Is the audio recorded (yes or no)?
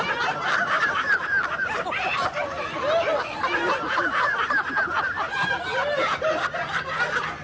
yes